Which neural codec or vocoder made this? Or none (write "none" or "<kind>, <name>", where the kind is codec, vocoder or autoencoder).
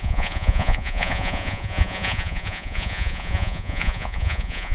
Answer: vocoder, Vocos